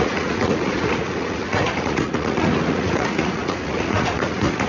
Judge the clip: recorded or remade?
remade